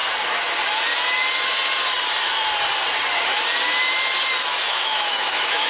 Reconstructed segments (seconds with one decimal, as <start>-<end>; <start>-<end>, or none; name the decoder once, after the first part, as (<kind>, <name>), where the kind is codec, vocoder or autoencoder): 4.7-5.7 (autoencoder, DAC-VAE)